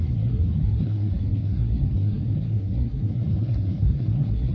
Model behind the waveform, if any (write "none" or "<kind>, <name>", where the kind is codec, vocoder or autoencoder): codec, SNAC